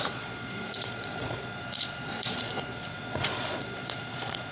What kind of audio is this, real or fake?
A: fake